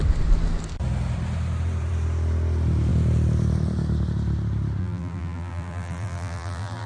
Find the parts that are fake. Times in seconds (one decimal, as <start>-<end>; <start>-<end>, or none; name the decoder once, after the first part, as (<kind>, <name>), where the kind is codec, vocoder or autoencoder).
4.8-6.9 (vocoder, BigVGAN v2)